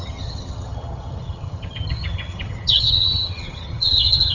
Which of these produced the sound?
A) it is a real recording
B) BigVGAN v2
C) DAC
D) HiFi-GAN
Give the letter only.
D